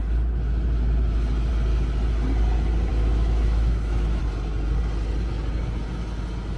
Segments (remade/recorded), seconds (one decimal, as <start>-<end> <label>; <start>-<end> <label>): 0.0-2.9 recorded; 2.9-4.2 remade; 4.2-6.6 recorded